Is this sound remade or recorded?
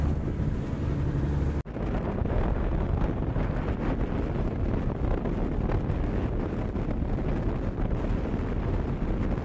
recorded